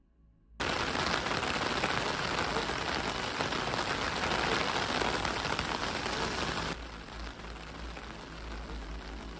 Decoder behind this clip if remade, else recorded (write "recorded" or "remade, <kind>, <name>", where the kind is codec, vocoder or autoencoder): recorded